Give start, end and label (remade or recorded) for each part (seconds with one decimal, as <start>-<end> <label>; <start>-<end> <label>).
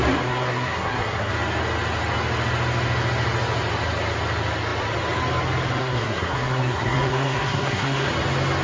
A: 0.0-1.3 remade; 1.3-5.8 recorded; 5.8-8.1 remade; 8.1-8.6 recorded